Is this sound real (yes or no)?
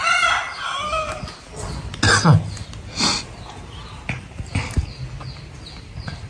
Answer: yes